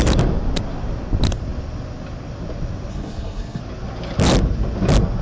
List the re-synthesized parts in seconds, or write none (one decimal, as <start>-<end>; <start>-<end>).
2.9-3.6